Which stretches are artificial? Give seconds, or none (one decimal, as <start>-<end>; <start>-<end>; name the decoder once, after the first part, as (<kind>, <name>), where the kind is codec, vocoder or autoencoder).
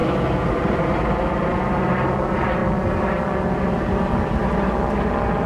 none